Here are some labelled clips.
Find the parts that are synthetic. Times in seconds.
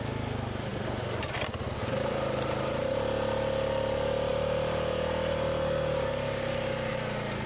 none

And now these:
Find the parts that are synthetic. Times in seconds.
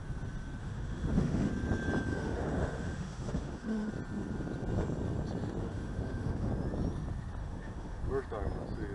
0.6-1.5; 2.1-3.9; 5.6-6.5; 7.4-8.0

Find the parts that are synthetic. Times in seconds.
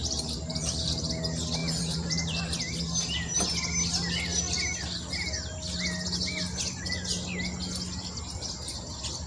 0.0-1.1; 1.6-2.4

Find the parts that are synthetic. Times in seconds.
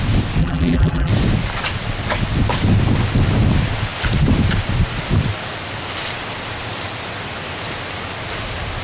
0.4-1.1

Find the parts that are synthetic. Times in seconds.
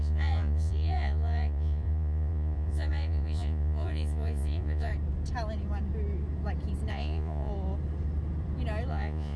0.0-4.9; 6.9-7.5; 8.9-9.4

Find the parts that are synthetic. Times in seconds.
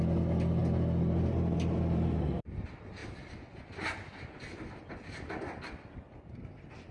none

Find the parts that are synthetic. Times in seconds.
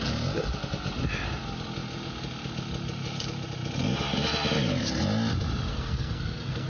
5.7-6.7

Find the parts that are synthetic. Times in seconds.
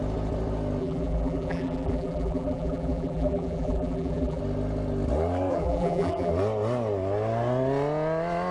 0.8-4.4; 5.5-6.3